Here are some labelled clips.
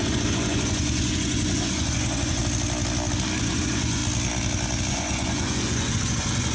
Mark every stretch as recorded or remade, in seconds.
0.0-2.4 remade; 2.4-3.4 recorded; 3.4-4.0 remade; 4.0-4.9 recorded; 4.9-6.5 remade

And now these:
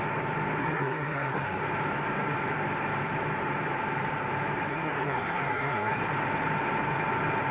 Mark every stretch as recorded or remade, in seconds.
0.0-0.6 recorded; 0.6-1.6 remade; 1.6-4.7 recorded; 4.7-6.0 remade; 6.0-7.5 recorded

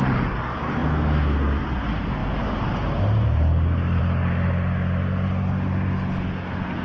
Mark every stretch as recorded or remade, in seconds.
0.0-6.8 recorded